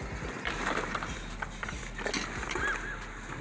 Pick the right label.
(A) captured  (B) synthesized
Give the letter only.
A